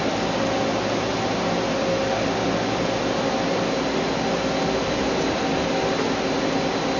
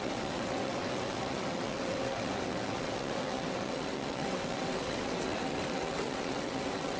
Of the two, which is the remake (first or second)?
second